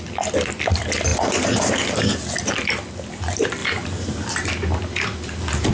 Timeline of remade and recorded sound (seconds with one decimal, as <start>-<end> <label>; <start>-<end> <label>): 0.0-5.7 recorded